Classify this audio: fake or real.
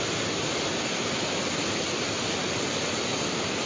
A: real